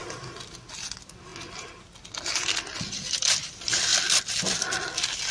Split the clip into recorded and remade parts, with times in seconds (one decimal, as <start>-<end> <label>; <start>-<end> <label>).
0.0-5.3 recorded